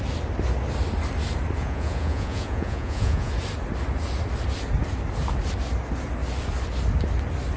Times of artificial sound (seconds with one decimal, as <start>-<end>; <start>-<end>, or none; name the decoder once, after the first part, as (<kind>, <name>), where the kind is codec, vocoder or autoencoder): 1.6-3.3 (vocoder, Vocos)